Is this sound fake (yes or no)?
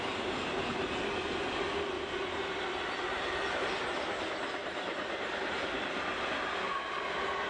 no